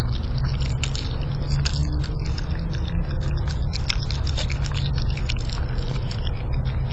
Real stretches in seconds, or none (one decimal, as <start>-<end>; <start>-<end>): 0.0-6.9